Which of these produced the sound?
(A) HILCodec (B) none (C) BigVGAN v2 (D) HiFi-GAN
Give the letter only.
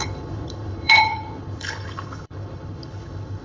A